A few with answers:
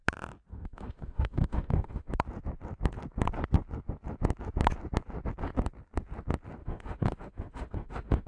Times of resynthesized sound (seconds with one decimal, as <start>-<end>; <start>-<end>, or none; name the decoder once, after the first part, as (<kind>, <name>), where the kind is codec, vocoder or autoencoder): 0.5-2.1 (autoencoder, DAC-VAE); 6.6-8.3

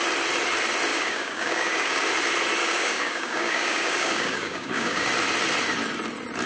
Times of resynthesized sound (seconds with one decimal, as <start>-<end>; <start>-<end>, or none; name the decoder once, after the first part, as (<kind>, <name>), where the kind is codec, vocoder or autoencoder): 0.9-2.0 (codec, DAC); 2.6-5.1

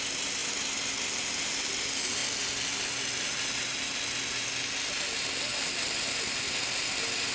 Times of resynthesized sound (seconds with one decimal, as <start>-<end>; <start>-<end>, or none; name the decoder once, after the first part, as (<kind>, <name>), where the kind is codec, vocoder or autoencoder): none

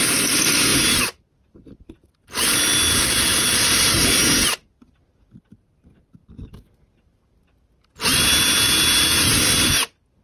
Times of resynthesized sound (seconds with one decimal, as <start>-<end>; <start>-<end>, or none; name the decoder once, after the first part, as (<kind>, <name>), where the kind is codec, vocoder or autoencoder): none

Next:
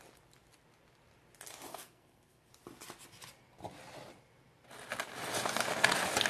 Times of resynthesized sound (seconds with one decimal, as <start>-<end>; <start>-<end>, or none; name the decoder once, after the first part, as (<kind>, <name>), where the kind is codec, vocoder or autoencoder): 1.7-2.5 (codec, SNAC)

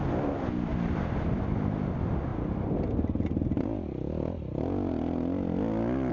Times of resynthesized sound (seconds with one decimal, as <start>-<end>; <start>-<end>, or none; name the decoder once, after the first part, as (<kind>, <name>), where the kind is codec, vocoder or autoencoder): none

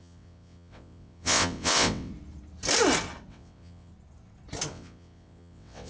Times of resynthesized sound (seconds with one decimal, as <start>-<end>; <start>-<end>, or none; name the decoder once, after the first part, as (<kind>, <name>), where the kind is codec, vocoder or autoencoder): 0.0-2.1 (vocoder, WaveNeXt); 3.3-3.9; 4.7-5.9

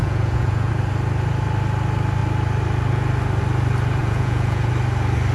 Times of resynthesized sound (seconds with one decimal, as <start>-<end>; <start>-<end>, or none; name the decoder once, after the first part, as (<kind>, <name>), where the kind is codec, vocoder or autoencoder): 0.0-0.7 (vocoder, Vocos); 4.0-4.7